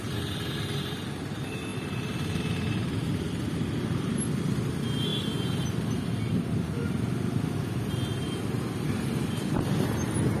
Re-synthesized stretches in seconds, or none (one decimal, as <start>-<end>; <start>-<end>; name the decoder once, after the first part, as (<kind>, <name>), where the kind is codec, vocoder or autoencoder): 1.7-4.2 (vocoder, BigVGAN v2)